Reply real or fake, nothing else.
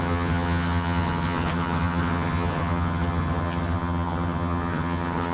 fake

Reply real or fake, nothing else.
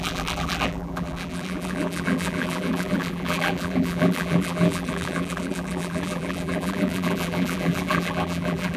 fake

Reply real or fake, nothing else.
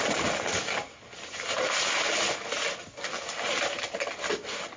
real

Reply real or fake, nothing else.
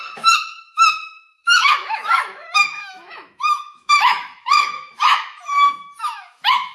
fake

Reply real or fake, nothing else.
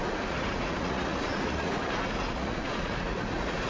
fake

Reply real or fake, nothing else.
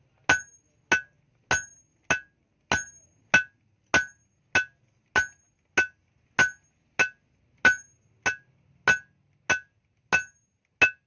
real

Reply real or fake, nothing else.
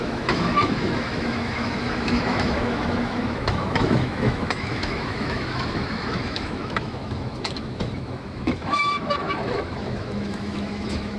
fake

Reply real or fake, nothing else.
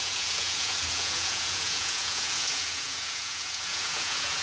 fake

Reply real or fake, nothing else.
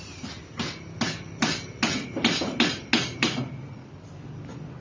real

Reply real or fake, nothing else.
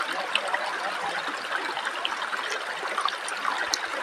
real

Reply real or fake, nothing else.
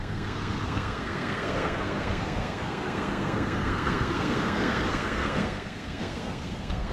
fake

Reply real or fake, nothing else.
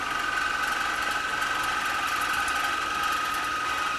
real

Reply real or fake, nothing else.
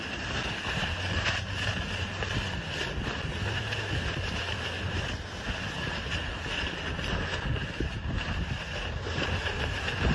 real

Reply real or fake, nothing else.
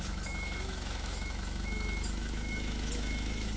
fake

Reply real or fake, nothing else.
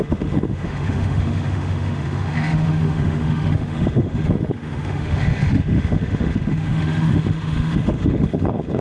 fake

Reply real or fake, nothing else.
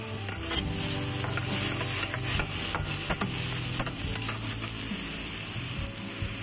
real